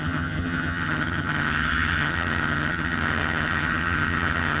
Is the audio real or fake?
fake